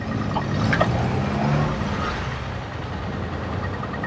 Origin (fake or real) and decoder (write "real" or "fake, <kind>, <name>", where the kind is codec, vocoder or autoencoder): real